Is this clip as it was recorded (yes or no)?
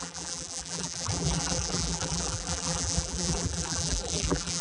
no